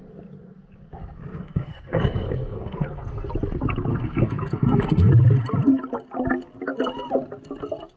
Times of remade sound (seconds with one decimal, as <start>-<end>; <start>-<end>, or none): 1.0-3.3; 3.9-5.1